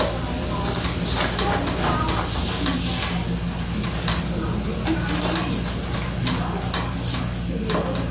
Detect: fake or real real